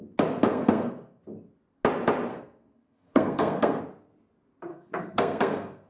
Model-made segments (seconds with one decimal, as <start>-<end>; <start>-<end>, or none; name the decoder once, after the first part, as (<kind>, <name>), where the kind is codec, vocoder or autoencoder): 0.5-1.2 (codec, SNAC); 2.3-3.8; 4.7-5.9